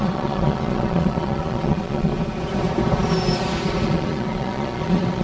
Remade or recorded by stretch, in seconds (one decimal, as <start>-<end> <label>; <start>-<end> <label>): 0.0-2.1 remade; 2.1-3.7 recorded; 3.7-5.2 remade